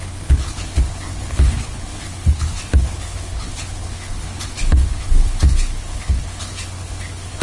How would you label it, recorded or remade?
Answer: remade